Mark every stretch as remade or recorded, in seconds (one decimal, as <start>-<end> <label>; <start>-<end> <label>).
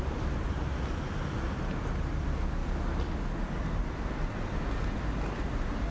0.0-5.9 recorded